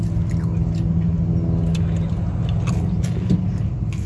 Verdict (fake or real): real